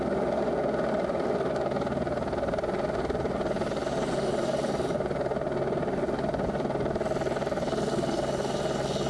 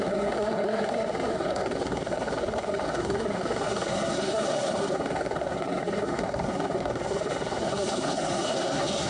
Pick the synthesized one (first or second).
second